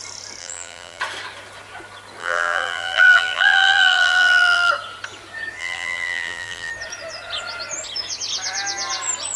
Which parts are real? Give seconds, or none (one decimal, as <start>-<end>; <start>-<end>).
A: 0.0-0.4; 1.0-2.2; 4.7-5.6; 6.7-9.4